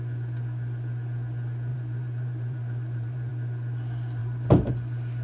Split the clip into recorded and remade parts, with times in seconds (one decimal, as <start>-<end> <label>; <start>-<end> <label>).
0.0-1.7 recorded; 1.7-3.3 remade; 3.3-4.2 recorded; 4.2-4.7 remade; 4.7-5.2 recorded